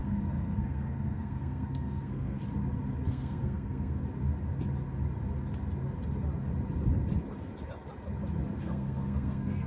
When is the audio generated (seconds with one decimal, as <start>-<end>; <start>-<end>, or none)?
0.0-2.4; 3.1-4.0; 8.6-9.7